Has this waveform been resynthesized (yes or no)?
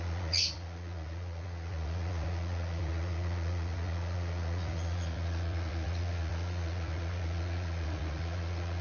yes